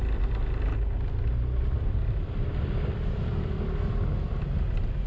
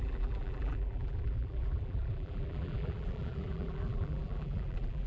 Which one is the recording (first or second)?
first